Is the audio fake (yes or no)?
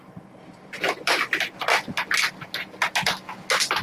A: no